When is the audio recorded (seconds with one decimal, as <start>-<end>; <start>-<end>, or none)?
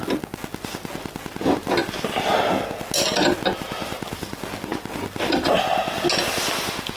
0.0-7.0